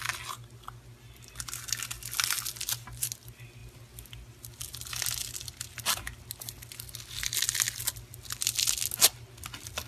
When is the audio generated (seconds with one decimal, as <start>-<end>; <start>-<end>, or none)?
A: none